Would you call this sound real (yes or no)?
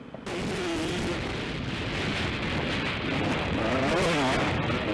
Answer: yes